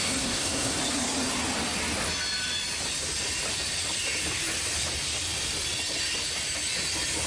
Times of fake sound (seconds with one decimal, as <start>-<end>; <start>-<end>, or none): 0.0-0.8